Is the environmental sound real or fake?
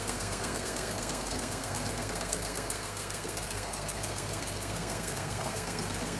fake